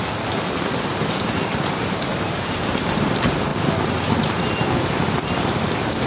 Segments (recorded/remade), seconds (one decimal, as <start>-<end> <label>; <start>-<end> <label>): 0.0-3.5 remade; 3.5-5.4 recorded; 5.4-6.1 remade